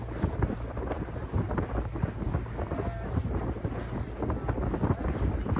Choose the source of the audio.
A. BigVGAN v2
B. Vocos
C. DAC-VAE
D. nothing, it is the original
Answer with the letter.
D